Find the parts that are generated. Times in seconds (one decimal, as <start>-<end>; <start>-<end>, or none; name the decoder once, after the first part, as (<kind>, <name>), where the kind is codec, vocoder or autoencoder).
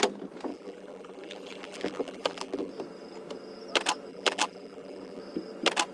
0.5-2.7 (vocoder, BigVGAN v2); 4.1-5.2